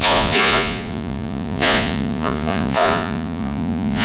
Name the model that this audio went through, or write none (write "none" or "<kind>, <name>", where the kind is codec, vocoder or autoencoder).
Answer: vocoder, Vocos